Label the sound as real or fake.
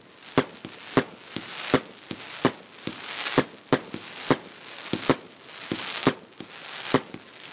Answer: real